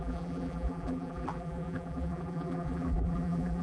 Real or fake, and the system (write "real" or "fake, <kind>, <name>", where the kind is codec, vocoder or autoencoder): fake, vocoder, BigVGAN v2